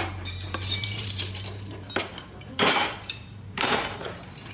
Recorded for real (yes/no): no